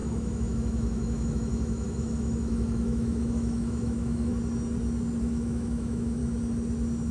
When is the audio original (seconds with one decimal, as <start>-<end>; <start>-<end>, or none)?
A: 4.3-5.2; 6.2-7.1